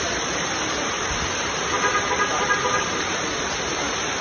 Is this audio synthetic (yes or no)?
yes